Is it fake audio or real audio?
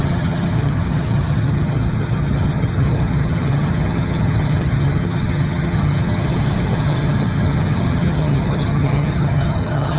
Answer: fake